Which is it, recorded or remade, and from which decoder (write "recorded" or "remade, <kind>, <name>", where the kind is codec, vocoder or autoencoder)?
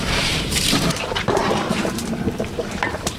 remade, vocoder, BigVGAN v2